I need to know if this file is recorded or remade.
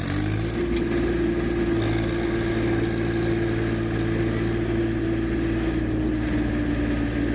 recorded